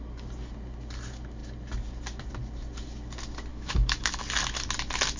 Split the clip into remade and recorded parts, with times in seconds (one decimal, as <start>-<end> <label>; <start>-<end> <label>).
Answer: 0.0-3.5 recorded; 3.5-4.2 remade; 4.2-5.2 recorded